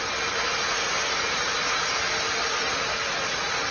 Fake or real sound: real